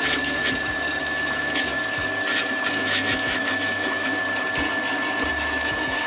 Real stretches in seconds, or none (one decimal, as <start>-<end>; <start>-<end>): 0.4-1.0; 1.7-2.7; 4.2-5.3

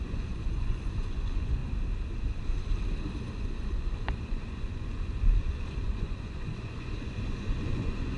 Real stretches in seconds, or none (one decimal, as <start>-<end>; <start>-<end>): 1.6-3.2

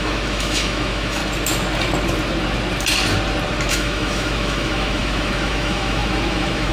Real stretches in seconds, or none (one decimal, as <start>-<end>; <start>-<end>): 1.2-3.7

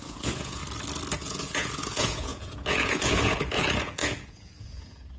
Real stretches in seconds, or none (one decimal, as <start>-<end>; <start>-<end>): 0.6-1.2

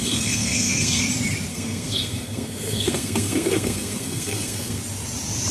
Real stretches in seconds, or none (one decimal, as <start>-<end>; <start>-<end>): 1.0-1.5; 4.8-5.5

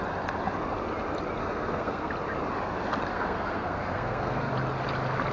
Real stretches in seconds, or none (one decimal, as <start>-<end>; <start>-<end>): 0.0-1.4; 2.1-3.1; 4.5-5.3